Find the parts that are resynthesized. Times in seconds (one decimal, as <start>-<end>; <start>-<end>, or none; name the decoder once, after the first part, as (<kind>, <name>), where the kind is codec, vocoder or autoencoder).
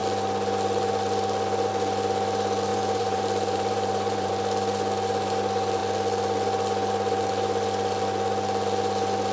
2.7-4.3 (vocoder, BigVGAN v2)